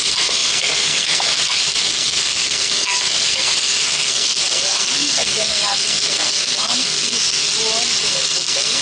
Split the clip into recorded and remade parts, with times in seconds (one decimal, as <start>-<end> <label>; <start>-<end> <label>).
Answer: 0.0-7.5 remade; 7.5-8.1 recorded; 8.1-8.8 remade